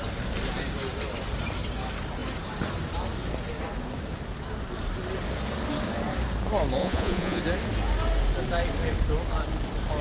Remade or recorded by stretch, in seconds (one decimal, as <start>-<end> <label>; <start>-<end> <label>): 0.0-6.8 recorded; 6.8-7.4 remade; 7.4-10.0 recorded